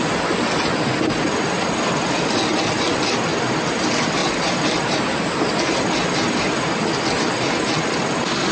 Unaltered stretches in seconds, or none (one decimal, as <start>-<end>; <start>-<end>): 0.0-8.5